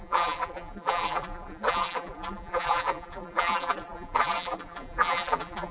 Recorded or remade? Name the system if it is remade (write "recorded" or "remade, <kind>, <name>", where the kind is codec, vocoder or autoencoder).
remade, vocoder, BigVGAN v2